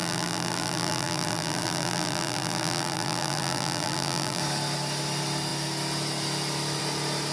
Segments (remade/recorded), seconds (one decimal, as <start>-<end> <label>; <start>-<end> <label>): 0.0-4.4 remade; 4.4-7.3 recorded